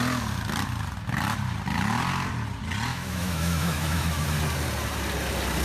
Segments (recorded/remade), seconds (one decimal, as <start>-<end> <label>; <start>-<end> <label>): 0.0-2.9 recorded; 2.9-4.4 remade; 4.4-5.6 recorded